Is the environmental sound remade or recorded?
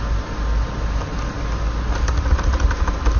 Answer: recorded